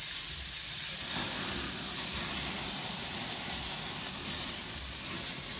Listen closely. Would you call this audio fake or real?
real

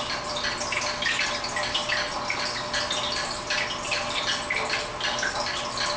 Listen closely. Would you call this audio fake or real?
real